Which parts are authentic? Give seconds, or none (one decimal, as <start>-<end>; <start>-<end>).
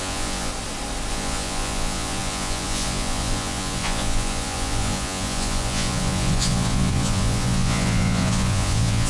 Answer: 0.5-1.1